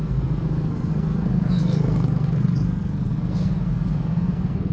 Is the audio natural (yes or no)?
no